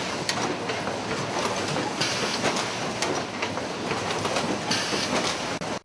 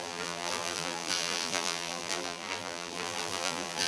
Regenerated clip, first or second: second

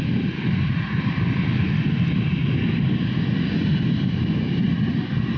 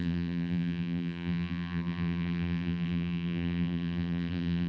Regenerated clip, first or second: second